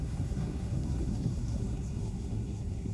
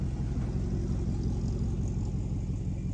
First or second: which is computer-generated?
first